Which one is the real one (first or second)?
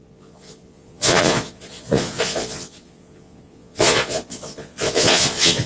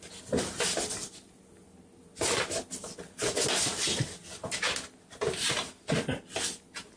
second